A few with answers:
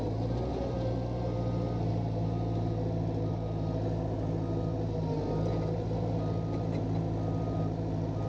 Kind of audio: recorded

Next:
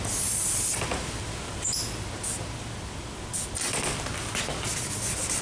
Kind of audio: recorded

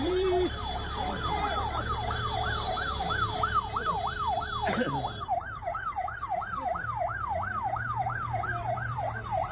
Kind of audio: remade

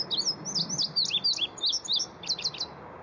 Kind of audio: recorded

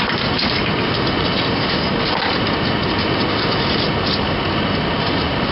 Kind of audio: recorded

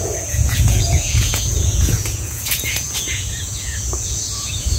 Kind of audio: remade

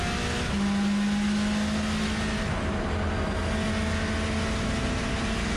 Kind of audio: recorded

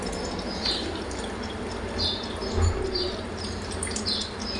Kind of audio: recorded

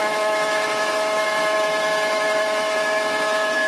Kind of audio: remade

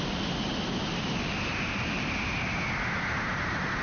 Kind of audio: recorded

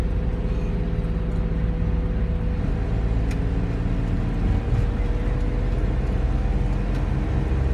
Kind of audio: recorded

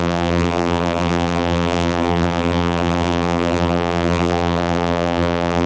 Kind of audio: remade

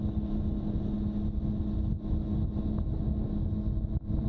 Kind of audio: recorded